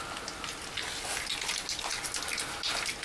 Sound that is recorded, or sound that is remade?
recorded